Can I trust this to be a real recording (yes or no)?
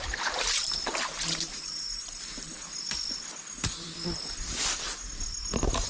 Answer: yes